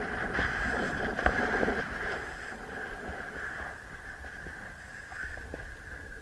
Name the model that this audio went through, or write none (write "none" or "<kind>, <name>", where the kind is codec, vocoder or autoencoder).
none